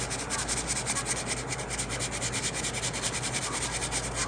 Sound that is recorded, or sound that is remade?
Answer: recorded